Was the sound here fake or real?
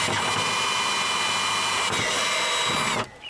real